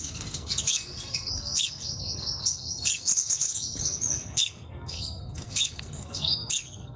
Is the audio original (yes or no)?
no